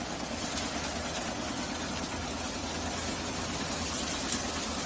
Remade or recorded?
recorded